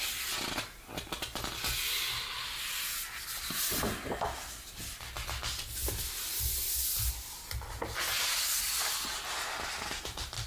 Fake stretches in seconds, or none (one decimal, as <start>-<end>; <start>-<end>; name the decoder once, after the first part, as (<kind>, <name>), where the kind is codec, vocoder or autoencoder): none